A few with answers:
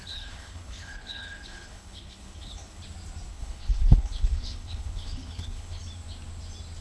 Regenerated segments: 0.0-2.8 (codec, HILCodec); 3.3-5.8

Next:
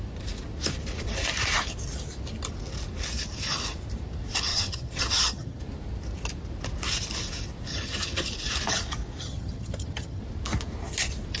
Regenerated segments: 4.5-5.6 (vocoder, HiFi-GAN); 7.7-8.3; 9.2-10.2

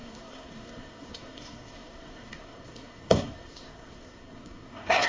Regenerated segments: 0.0-5.1 (codec, SNAC)

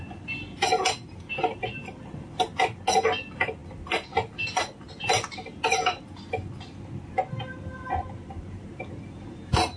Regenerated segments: 0.7-1.7 (vocoder, BigVGAN v2)

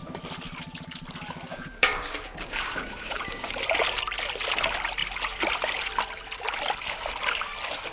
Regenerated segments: 1.5-3.6 (codec, DAC)

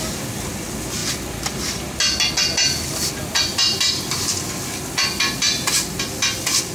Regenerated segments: none

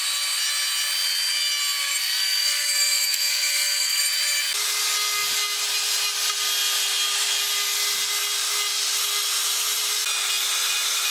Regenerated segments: 2.0-4.0 (codec, SNAC)

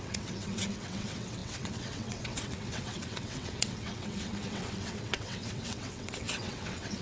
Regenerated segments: 0.0-7.0 (vocoder, WaveNeXt)